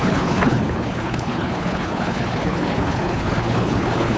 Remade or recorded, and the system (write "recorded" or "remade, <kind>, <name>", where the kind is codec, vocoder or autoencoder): remade, codec, HILCodec